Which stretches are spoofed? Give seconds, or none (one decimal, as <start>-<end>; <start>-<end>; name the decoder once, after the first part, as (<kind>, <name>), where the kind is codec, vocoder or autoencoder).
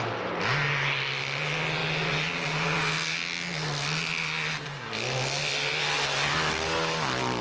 none